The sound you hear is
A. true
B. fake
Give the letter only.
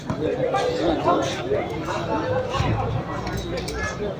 A